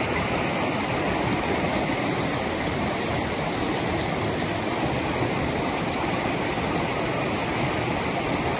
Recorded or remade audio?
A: recorded